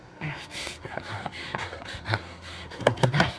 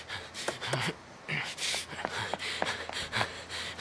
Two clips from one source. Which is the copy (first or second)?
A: first